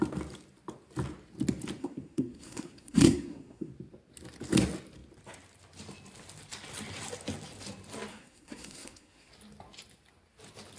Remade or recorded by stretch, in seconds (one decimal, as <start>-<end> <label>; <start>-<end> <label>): 0.0-1.8 recorded; 1.8-3.7 remade; 3.7-8.1 recorded; 8.1-9.3 remade; 9.3-10.8 recorded